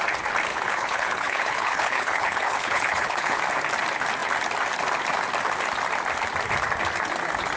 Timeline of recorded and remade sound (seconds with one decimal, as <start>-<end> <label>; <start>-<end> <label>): 0.0-0.5 recorded; 0.5-3.4 remade; 3.4-7.6 recorded